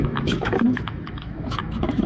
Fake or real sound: fake